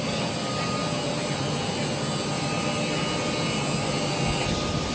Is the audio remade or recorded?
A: recorded